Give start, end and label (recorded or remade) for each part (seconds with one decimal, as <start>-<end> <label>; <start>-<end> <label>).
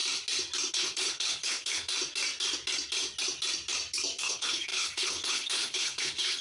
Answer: 0.0-0.7 recorded; 0.7-1.9 remade; 1.9-4.2 recorded; 4.2-6.4 remade